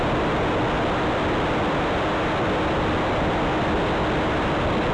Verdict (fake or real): real